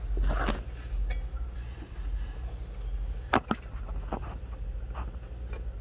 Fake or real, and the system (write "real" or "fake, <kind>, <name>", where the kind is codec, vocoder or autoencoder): real